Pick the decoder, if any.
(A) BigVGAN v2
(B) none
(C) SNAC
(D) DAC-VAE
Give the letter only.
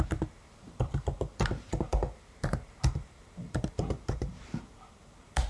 A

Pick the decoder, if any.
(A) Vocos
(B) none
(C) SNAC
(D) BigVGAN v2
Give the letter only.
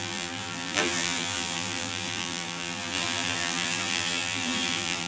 D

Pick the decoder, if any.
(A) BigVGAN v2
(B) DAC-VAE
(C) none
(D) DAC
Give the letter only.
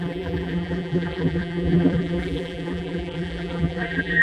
A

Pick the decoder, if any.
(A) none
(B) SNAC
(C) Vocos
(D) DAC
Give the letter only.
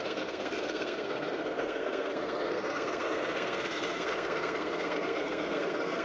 B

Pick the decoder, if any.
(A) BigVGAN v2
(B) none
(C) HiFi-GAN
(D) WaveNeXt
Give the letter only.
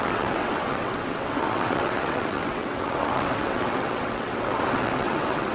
D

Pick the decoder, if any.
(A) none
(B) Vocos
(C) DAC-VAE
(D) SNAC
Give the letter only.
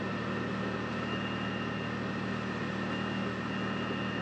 A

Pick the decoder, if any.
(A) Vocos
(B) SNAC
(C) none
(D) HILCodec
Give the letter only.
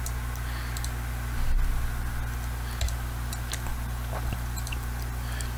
C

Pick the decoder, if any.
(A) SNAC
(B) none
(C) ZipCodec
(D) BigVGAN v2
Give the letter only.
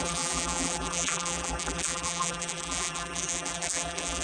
D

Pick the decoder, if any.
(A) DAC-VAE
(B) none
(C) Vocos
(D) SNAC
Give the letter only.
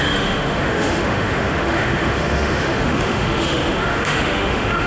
A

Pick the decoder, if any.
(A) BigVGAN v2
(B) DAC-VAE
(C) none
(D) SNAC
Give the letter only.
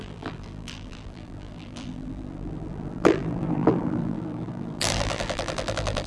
A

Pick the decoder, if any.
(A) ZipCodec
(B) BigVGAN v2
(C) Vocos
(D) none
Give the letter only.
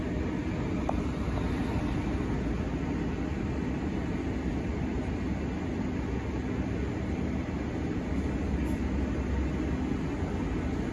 D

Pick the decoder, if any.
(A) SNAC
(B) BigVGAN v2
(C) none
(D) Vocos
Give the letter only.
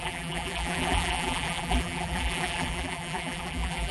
B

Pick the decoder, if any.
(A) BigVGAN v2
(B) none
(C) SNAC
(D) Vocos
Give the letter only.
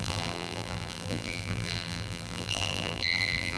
A